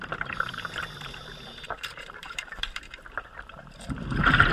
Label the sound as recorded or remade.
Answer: remade